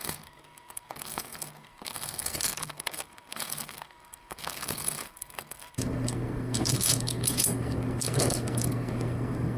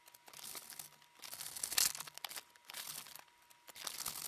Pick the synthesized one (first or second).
first